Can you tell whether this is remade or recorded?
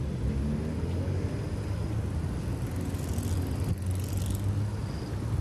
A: recorded